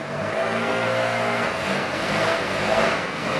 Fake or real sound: fake